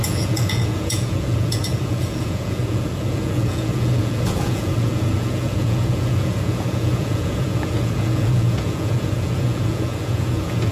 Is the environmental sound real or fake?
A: fake